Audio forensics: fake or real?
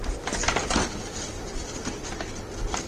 real